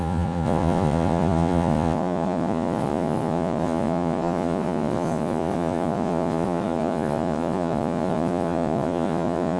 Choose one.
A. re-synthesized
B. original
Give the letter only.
A